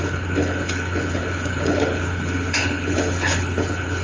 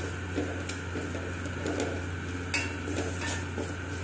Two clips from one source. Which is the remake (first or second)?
first